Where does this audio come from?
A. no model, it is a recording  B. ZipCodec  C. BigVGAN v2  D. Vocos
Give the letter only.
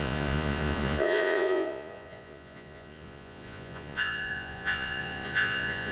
D